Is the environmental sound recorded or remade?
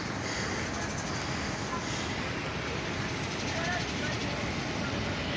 recorded